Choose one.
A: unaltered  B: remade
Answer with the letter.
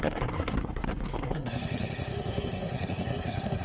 B